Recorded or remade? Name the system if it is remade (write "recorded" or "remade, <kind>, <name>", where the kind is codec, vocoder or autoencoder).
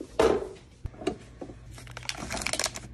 recorded